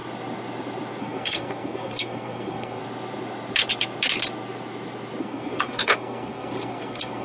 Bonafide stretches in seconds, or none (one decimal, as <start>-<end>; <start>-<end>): 0.0-1.0; 2.8-5.2